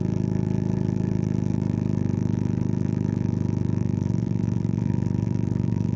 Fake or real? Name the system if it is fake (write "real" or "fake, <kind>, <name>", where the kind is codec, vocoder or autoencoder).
fake, vocoder, BigVGAN v2